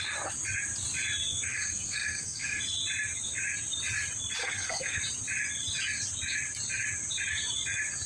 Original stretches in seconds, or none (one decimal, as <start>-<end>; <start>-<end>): 0.0-1.3; 2.6-4.4; 5.0-8.1